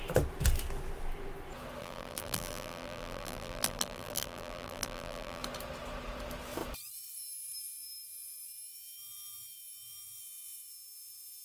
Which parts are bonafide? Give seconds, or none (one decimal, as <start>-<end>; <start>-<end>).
0.0-1.8; 5.4-11.4